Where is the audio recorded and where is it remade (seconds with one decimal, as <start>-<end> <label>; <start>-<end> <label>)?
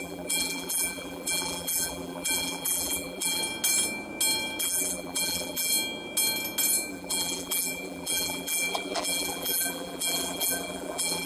0.0-3.4 remade; 3.4-4.6 recorded; 4.6-5.7 remade; 5.7-6.9 recorded; 6.9-11.3 remade